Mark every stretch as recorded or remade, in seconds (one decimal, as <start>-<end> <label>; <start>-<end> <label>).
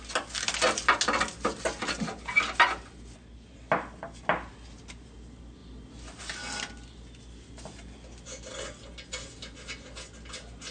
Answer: 0.0-10.7 recorded